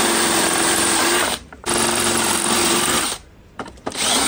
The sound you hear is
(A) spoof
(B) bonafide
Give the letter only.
A